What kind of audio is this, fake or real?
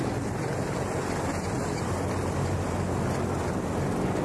real